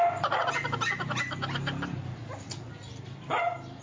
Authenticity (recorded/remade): recorded